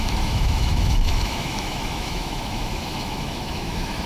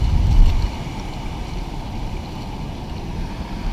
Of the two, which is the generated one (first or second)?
first